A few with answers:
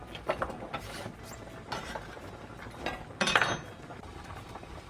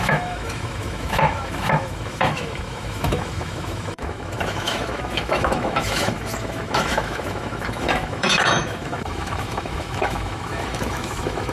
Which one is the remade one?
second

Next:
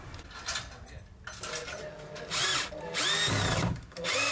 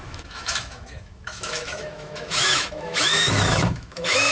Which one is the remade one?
second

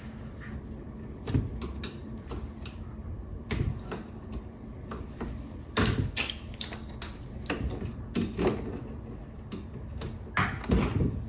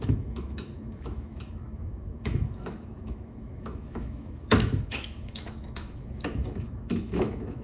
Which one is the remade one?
second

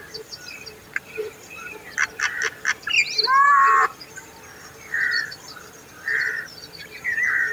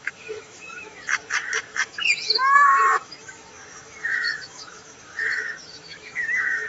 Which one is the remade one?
second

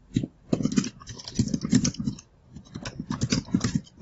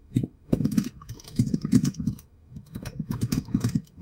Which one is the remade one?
second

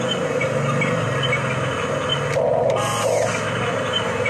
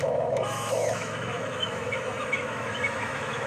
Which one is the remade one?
second